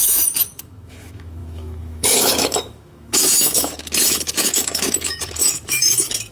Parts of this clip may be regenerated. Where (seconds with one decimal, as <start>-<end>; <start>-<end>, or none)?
0.0-6.3